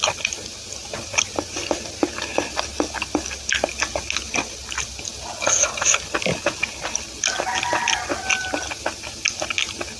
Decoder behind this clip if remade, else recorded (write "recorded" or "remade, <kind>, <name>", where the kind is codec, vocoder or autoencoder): recorded